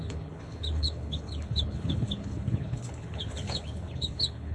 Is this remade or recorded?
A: remade